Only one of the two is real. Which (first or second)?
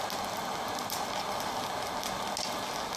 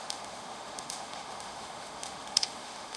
first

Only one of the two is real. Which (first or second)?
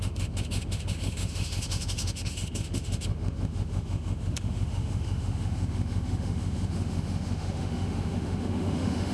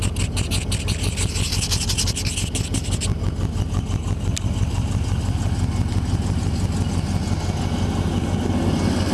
second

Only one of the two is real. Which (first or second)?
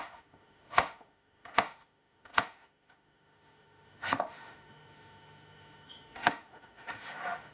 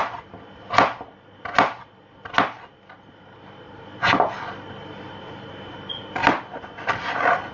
second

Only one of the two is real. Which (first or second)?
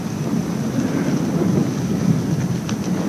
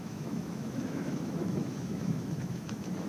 first